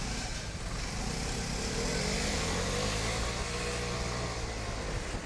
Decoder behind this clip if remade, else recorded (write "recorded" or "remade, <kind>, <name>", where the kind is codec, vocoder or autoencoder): recorded